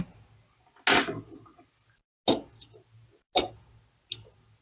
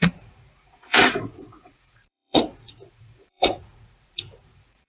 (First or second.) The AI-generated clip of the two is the second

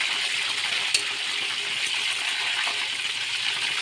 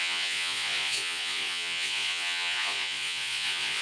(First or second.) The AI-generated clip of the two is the second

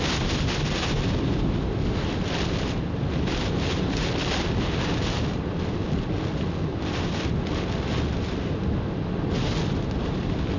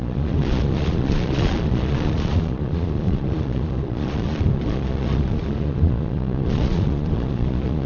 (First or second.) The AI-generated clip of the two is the second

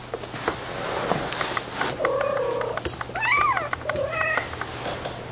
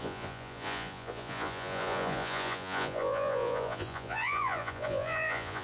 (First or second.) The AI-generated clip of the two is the second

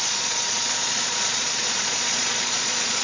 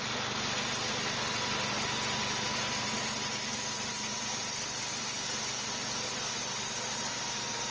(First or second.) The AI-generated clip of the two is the first